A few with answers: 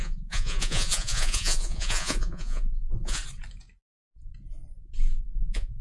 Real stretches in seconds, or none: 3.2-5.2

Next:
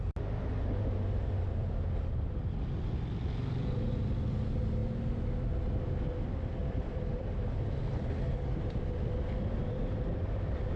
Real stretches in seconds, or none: 0.0-6.6; 10.3-10.8